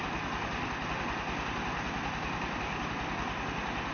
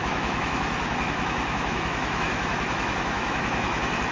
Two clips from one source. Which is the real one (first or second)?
first